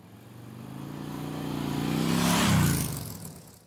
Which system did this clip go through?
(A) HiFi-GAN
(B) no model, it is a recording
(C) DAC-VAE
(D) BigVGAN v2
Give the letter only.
B